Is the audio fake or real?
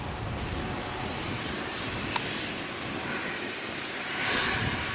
real